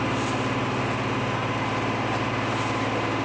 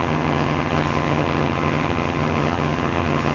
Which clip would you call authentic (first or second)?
first